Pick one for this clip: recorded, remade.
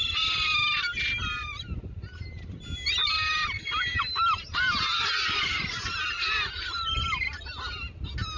recorded